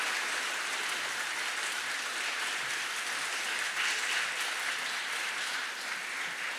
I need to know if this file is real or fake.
real